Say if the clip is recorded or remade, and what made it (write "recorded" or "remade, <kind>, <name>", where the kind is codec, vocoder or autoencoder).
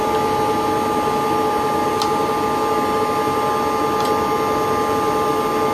recorded